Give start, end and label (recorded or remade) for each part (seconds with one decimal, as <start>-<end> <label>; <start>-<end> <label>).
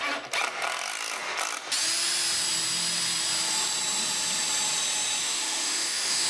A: 0.0-5.2 recorded; 5.2-6.3 remade